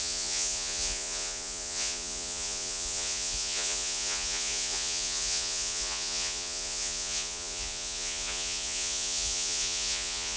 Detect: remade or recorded remade